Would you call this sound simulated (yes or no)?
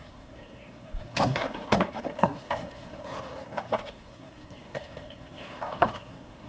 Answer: yes